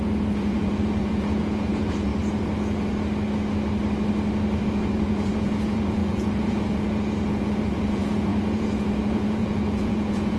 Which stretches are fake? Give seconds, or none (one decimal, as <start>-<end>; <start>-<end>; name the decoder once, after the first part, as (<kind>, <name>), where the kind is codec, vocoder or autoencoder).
0.0-2.1 (vocoder, Vocos); 4.6-10.4